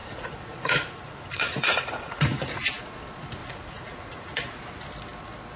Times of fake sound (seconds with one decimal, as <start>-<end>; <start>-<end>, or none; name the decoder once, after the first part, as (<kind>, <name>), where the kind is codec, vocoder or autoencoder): 0.0-2.7 (vocoder, Vocos); 3.4-4.6